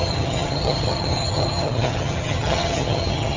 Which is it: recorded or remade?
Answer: remade